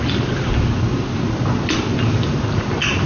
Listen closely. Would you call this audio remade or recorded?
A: recorded